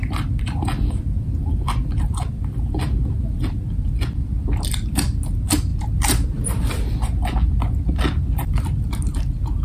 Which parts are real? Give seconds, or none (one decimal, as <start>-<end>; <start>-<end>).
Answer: 0.0-9.6